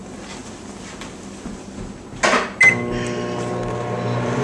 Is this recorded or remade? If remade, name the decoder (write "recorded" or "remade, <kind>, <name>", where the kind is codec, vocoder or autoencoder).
recorded